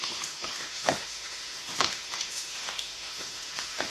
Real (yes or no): no